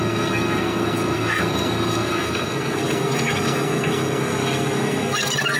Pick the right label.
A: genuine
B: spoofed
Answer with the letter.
B